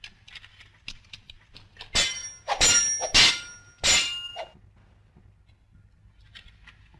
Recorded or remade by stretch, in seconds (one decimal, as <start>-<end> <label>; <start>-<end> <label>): 0.0-7.0 recorded